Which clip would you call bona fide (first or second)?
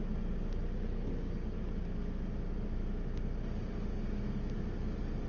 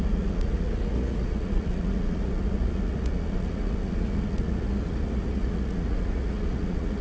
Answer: first